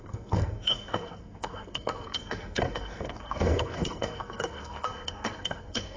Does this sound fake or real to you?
fake